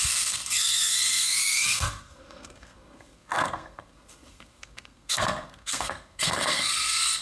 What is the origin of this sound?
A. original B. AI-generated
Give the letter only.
B